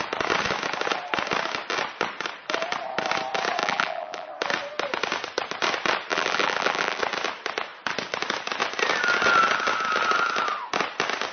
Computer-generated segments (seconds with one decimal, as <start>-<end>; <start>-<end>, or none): 3.6-4.3; 6.1-7.0